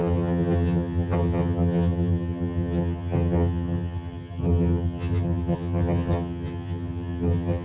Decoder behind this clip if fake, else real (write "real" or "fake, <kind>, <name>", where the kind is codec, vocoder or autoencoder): fake, vocoder, HiFi-GAN